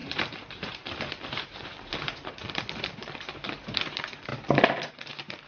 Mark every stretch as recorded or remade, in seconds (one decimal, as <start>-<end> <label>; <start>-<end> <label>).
0.0-4.3 remade; 4.3-4.9 recorded; 4.9-5.5 remade